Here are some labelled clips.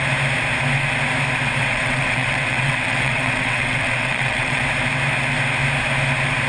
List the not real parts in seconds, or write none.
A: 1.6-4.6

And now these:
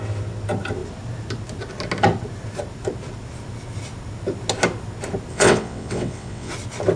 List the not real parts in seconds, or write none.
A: 5.3-6.5

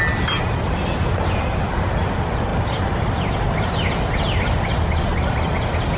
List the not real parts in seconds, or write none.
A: none

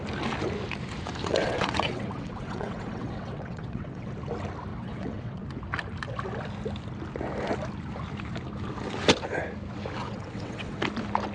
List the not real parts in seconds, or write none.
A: 1.2-4.1; 4.7-5.4; 10.0-10.8

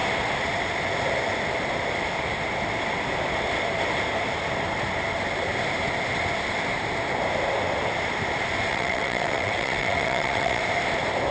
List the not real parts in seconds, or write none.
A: 8.7-10.6

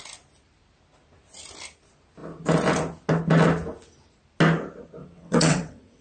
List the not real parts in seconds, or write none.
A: 5.0-6.0

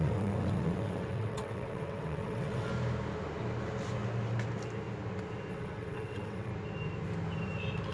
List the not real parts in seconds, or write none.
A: 0.0-2.7; 5.5-6.5